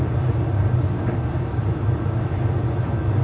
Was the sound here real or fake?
real